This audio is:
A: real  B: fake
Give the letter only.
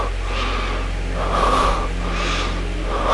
A